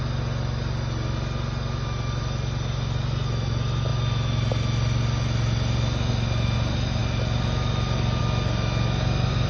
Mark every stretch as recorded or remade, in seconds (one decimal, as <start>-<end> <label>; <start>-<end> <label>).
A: 0.0-9.5 recorded

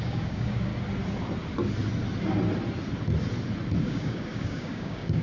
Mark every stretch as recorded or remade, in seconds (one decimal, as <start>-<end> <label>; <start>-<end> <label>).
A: 0.0-0.7 remade; 0.7-3.8 recorded; 3.8-5.2 remade

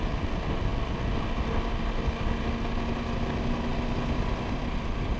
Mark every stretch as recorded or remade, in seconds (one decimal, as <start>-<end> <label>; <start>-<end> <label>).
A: 0.0-5.2 recorded

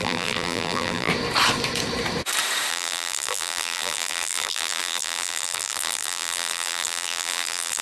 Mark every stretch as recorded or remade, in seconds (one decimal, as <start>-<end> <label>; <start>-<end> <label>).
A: 0.0-1.1 remade; 1.1-2.7 recorded; 2.7-7.8 remade

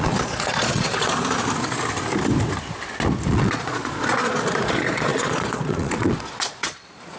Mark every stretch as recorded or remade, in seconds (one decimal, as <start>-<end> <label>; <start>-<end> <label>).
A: 0.0-1.2 remade; 1.2-3.3 recorded; 3.3-7.2 remade

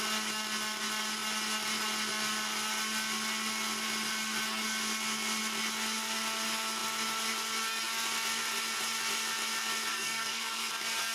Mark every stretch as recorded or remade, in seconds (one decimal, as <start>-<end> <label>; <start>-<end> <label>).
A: 0.0-9.9 recorded; 9.9-10.7 remade; 10.7-11.1 recorded